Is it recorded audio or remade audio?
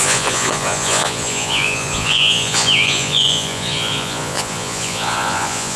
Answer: remade